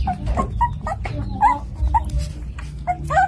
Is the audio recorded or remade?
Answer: recorded